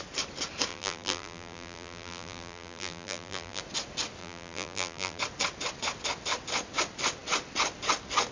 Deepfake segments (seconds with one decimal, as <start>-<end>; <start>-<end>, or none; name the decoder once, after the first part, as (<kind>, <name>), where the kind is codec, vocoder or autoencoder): 0.7-3.6 (vocoder, BigVGAN v2); 4.2-5.2